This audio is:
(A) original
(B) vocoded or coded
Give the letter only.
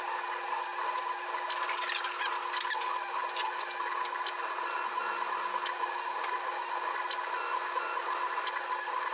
A